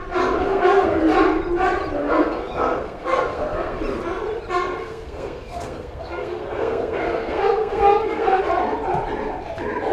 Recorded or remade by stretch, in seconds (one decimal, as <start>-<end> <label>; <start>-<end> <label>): 0.0-0.4 recorded; 0.4-1.0 remade; 1.0-2.0 recorded; 2.0-3.8 remade; 3.8-4.8 recorded; 4.8-8.4 remade; 8.4-9.9 recorded